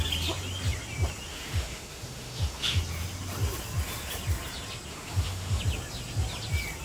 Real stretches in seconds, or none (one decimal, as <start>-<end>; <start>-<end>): 0.0-1.3; 2.8-4.9; 5.6-6.8